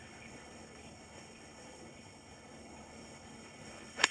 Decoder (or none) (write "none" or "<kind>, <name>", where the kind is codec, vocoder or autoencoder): codec, HILCodec